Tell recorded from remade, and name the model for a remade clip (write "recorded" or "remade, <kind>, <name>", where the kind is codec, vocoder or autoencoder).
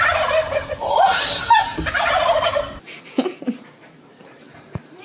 remade, vocoder, BigVGAN v2